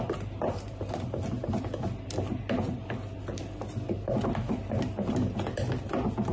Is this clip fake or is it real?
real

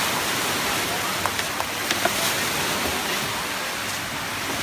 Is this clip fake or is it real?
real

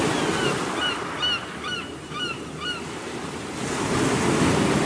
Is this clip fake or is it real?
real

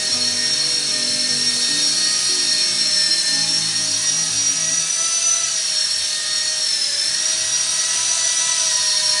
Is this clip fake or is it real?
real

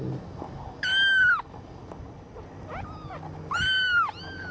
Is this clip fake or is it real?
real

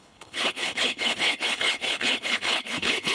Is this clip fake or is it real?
fake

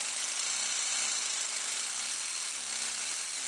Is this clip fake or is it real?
real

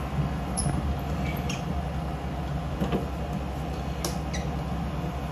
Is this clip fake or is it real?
real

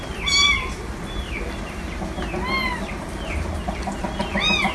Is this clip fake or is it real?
real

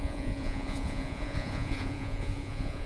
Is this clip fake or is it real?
fake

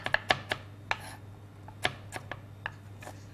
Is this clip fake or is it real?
real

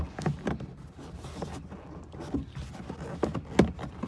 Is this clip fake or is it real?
real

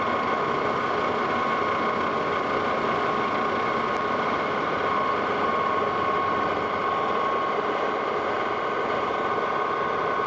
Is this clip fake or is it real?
real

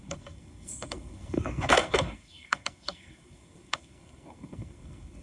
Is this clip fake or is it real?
fake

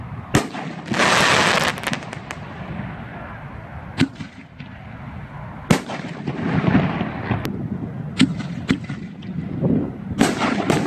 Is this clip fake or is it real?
real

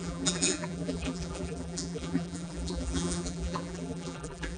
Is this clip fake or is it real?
fake